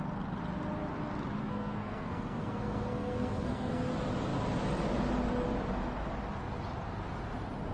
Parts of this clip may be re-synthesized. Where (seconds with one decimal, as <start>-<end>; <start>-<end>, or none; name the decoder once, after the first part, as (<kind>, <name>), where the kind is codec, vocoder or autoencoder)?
1.4-3.9 (codec, SNAC)